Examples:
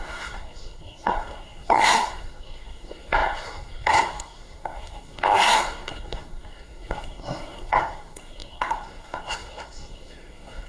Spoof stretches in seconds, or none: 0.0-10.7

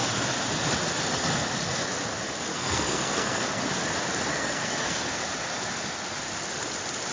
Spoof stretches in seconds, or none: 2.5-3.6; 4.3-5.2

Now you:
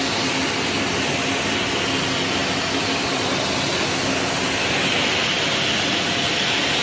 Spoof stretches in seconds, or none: none

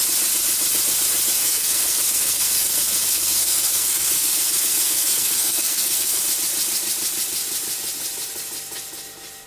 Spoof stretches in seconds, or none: 1.4-6.2